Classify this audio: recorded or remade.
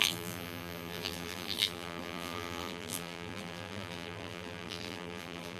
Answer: remade